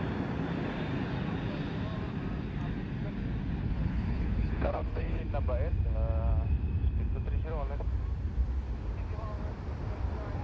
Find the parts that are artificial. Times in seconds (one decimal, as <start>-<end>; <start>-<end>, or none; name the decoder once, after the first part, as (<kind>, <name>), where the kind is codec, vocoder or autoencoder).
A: 3.6-5.2 (codec, HILCodec)